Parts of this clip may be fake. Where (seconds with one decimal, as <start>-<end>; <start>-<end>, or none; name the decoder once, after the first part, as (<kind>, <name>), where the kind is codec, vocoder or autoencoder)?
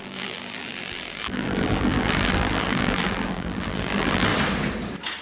0.0-4.3 (vocoder, BigVGAN v2)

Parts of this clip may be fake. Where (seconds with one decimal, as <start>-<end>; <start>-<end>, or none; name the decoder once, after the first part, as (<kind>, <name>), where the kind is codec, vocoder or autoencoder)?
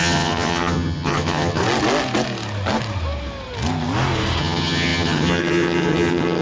0.0-1.6 (vocoder, HiFi-GAN); 4.4-6.4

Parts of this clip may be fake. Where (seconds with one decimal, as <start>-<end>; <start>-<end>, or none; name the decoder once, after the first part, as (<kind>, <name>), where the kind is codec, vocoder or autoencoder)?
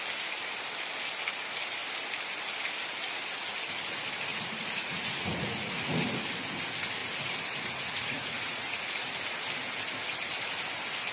4.3-6.3 (vocoder, Vocos); 7.0-9.1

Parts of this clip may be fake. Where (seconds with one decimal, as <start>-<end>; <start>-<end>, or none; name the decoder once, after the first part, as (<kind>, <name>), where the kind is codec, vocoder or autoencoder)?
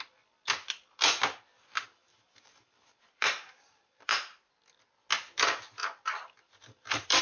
1.9-4.5 (vocoder, BigVGAN v2); 5.8-7.2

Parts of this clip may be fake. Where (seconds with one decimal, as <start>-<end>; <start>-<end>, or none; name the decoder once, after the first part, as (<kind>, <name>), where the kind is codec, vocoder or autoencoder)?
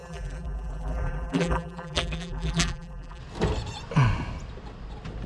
0.0-3.2 (vocoder, BigVGAN v2)